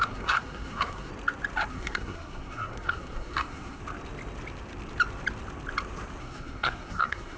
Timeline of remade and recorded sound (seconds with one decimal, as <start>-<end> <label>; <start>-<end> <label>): 0.0-1.1 remade; 1.1-1.7 recorded; 1.7-3.8 remade; 3.8-6.2 recorded; 6.2-7.4 remade